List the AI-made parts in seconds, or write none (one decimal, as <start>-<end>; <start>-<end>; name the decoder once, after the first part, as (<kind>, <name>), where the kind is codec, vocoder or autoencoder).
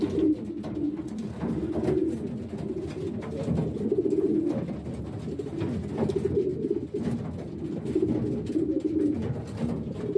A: none